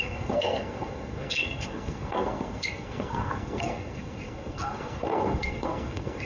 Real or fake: fake